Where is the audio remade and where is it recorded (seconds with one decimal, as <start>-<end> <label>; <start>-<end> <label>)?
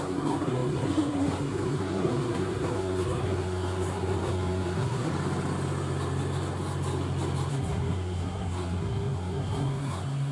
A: 0.0-5.1 remade; 5.1-7.5 recorded; 7.5-10.3 remade